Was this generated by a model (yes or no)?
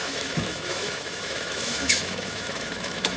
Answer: yes